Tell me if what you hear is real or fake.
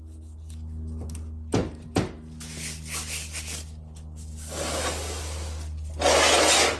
real